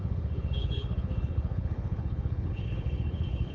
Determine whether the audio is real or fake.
fake